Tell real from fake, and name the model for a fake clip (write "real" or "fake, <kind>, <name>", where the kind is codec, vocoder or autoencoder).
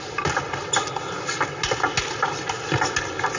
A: real